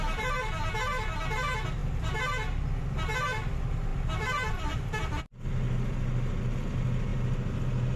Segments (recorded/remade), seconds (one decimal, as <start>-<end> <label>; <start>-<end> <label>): 0.0-8.0 recorded

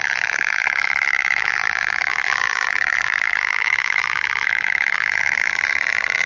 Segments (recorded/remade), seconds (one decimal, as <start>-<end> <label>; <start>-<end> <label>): 0.0-6.3 remade

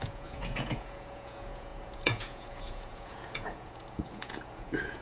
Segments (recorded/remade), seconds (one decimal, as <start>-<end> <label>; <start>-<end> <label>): 0.0-5.0 remade

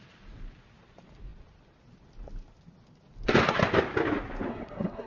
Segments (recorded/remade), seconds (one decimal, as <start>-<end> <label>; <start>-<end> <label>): 0.0-4.5 recorded; 4.5-5.1 remade

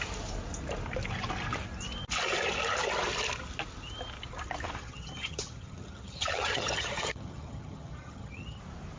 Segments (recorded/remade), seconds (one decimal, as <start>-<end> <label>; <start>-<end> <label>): 0.0-4.8 recorded; 4.8-8.6 remade; 8.6-9.0 recorded

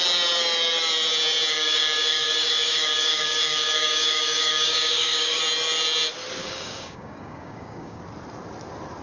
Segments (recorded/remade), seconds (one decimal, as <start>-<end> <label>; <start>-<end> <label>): 0.0-1.5 recorded; 1.5-5.4 remade; 5.4-6.4 recorded; 6.4-8.0 remade; 8.0-9.0 recorded

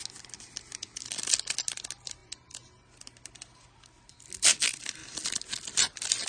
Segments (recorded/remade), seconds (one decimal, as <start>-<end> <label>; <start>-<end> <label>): 0.0-6.3 recorded

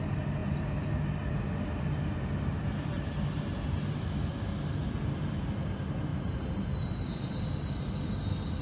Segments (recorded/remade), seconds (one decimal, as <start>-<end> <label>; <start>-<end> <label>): 0.0-6.1 recorded; 6.1-7.4 remade; 7.4-8.6 recorded